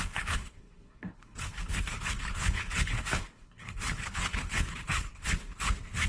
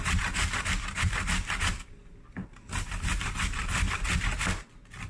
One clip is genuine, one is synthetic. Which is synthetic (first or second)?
first